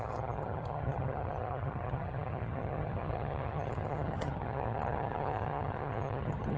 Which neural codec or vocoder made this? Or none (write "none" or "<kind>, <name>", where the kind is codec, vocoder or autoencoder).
vocoder, HiFi-GAN